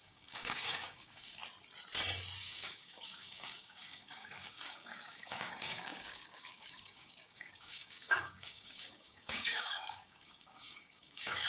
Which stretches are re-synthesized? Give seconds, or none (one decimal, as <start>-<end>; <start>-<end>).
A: 0.0-1.4; 2.4-11.5